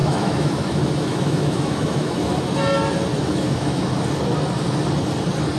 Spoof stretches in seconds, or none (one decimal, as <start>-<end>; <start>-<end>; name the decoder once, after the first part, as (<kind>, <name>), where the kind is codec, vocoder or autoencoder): 0.0-2.4 (autoencoder, DAC-VAE); 3.1-3.9